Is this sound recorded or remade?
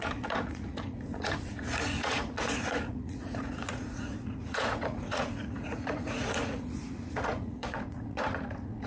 remade